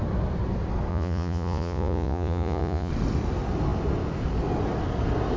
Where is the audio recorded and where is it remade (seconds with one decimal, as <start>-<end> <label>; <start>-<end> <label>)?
0.0-0.9 recorded; 0.9-2.9 remade; 2.9-5.4 recorded